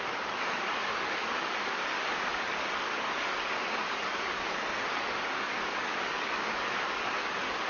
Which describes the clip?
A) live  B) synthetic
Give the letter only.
B